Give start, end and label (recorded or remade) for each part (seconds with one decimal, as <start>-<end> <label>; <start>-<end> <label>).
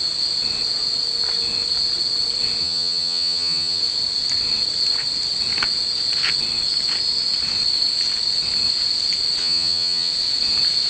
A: 0.0-2.6 recorded; 2.6-3.8 remade; 3.8-9.4 recorded; 9.4-10.1 remade; 10.1-10.9 recorded